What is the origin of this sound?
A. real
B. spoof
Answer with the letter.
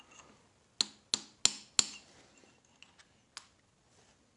A